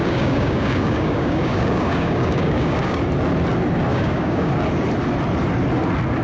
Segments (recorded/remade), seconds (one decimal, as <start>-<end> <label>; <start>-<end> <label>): 0.0-3.0 remade; 3.0-3.9 recorded; 3.9-4.5 remade; 4.5-6.2 recorded